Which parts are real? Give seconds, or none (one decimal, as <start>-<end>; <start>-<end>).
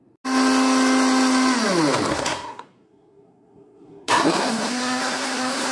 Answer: 0.0-2.1